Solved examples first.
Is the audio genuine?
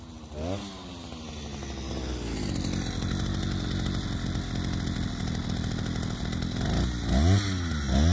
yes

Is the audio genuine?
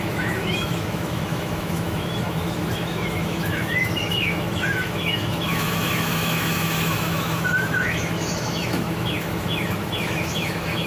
no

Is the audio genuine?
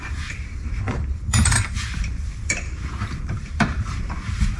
no